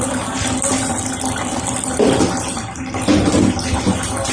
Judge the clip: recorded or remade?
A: recorded